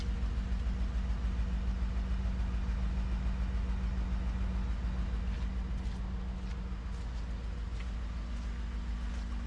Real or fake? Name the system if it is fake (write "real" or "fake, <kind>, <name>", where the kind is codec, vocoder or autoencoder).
real